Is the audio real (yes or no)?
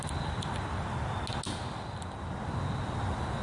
yes